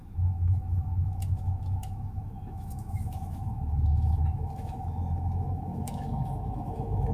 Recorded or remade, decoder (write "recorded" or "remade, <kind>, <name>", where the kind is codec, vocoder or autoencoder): remade, autoencoder, DAC-VAE